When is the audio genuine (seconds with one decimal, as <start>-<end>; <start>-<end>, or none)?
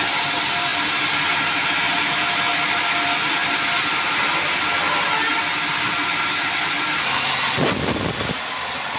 0.0-9.0